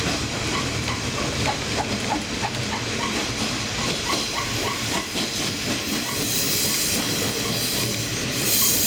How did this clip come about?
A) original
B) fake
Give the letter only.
B